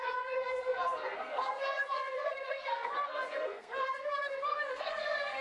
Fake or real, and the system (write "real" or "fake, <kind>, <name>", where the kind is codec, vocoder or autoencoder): fake, codec, SNAC